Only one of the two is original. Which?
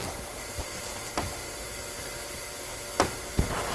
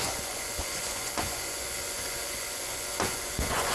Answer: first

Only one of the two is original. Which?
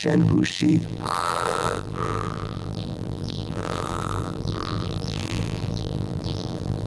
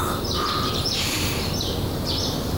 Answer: second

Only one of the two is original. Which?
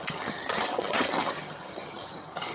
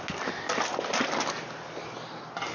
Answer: second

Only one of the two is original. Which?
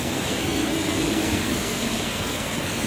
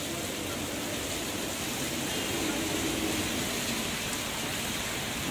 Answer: second